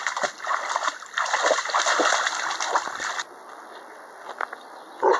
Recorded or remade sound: recorded